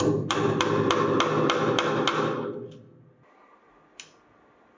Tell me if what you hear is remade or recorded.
recorded